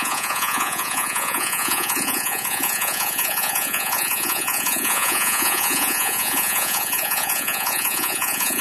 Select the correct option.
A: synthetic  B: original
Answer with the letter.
A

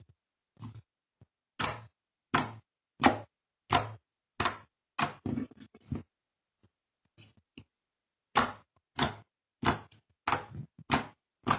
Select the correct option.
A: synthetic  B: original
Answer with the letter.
B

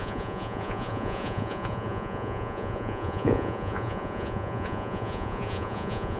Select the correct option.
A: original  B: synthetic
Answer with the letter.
B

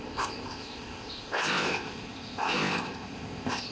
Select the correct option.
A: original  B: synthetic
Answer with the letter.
B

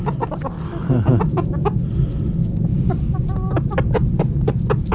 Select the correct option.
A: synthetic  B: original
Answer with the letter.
B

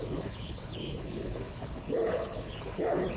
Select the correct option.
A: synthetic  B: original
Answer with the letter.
A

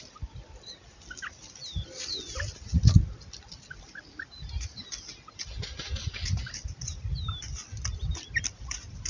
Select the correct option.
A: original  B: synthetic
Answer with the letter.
A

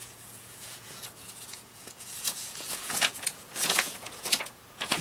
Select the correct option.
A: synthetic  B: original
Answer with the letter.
A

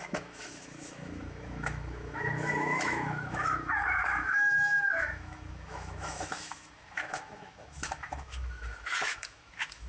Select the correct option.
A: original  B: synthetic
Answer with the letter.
B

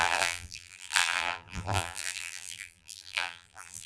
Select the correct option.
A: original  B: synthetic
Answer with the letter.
B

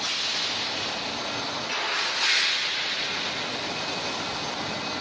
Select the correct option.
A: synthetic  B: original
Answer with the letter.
B